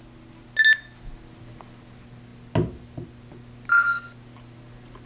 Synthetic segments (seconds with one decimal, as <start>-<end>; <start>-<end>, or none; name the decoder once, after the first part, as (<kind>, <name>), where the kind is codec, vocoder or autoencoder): none